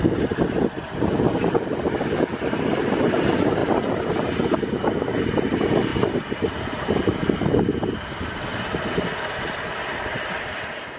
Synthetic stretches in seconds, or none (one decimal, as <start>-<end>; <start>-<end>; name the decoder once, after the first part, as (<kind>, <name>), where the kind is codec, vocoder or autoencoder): none